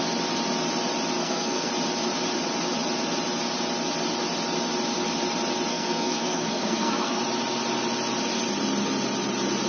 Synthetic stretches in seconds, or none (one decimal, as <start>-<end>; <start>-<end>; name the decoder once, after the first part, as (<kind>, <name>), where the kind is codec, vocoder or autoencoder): 1.2-1.7 (codec, SNAC); 5.7-7.2